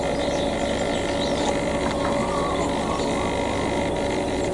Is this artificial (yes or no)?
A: no